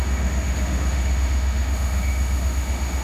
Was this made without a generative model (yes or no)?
no